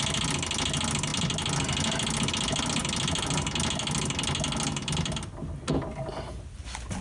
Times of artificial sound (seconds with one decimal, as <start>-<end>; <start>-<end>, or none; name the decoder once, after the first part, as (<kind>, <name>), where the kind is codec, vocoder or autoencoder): none